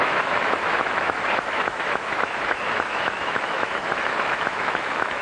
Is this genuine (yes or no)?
no